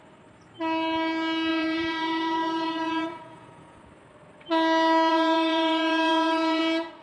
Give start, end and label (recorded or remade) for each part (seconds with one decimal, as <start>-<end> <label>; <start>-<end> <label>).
0.0-1.5 recorded; 1.5-3.8 remade; 3.8-5.1 recorded; 5.1-6.6 remade; 6.6-7.0 recorded